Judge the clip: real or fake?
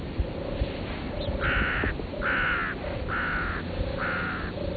real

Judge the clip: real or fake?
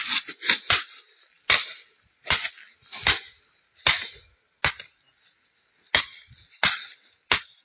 real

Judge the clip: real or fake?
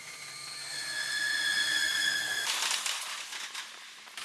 real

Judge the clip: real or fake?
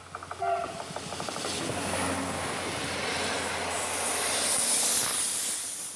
real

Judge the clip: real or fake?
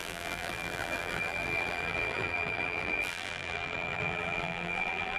fake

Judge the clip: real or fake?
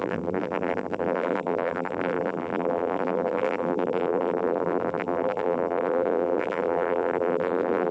fake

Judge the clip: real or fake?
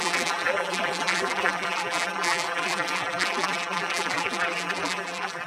fake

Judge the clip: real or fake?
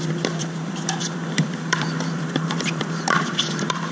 fake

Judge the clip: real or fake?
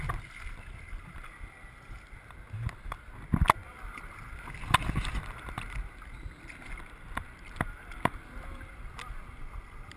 real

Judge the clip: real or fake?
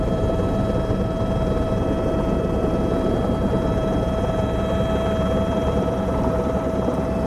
fake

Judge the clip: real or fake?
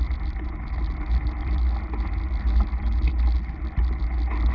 real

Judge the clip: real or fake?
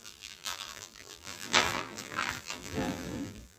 fake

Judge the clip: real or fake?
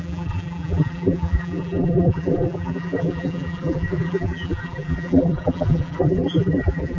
fake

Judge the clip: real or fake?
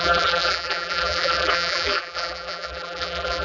fake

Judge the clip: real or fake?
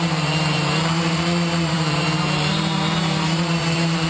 fake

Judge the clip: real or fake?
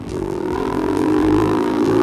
fake